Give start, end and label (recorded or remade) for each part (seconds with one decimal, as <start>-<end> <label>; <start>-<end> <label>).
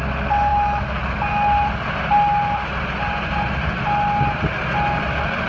0.0-5.5 recorded